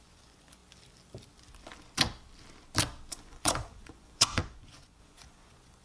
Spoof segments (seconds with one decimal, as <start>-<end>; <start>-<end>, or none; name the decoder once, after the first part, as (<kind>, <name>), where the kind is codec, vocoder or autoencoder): 0.0-0.6 (vocoder, Vocos); 3.1-5.8